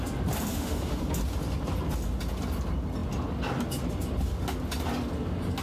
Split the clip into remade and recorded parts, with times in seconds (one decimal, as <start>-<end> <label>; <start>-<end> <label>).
0.0-0.5 recorded; 0.5-1.0 remade; 1.0-5.6 recorded

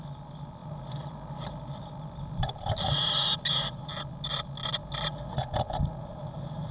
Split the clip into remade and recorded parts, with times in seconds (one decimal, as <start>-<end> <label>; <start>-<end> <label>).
0.0-6.7 recorded

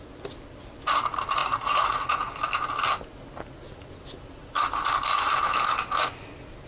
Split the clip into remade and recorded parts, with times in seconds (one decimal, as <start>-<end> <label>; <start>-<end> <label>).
0.0-1.4 recorded; 1.4-2.3 remade; 2.3-6.7 recorded

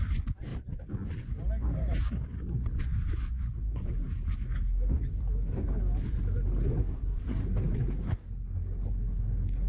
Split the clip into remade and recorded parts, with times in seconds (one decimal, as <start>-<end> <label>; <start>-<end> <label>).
0.0-6.8 recorded; 6.8-7.4 remade; 7.4-9.7 recorded

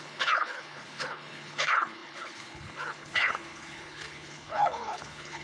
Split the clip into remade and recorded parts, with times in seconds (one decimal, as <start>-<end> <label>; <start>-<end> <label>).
0.0-5.4 remade

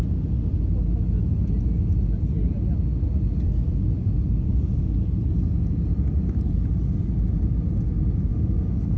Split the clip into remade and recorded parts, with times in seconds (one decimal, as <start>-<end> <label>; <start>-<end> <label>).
0.0-8.3 recorded; 8.3-9.0 remade

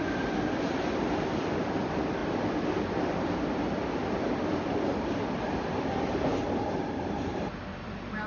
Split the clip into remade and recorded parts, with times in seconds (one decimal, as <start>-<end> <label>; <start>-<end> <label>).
0.0-4.7 recorded; 4.7-5.5 remade; 5.5-6.3 recorded; 6.3-8.3 remade